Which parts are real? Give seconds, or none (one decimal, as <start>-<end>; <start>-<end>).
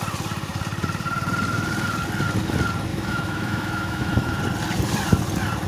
0.0-2.9; 4.4-5.7